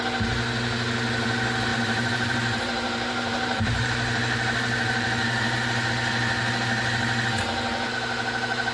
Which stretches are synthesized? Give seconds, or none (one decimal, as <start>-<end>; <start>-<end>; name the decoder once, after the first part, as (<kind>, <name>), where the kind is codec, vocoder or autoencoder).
1.7-5.9 (vocoder, BigVGAN v2)